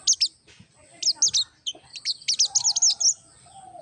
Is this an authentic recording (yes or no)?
yes